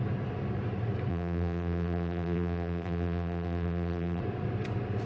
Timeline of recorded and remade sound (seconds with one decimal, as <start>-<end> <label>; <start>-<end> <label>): 0.0-1.1 recorded; 1.1-4.2 remade; 4.2-5.1 recorded